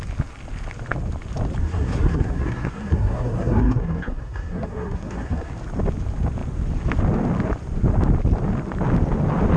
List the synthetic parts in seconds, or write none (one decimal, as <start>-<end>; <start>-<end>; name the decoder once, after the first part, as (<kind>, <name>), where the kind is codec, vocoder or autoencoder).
1.6-5.5 (codec, SNAC)